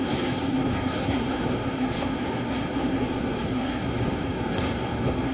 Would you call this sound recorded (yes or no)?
no